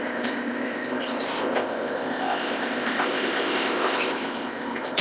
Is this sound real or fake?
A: fake